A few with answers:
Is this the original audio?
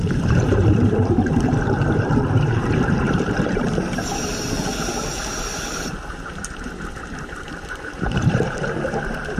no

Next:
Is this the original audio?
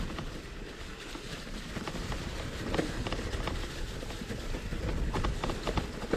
no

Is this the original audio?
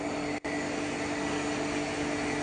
yes